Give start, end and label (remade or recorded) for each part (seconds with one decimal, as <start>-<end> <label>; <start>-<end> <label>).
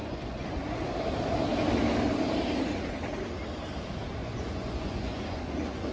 0.0-0.6 remade; 0.6-4.2 recorded; 4.2-5.9 remade